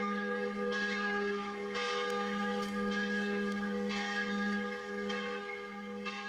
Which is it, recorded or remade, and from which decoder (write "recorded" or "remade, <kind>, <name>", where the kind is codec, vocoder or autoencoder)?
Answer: remade, codec, SNAC